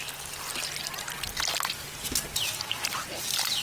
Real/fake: real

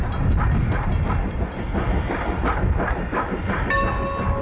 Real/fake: real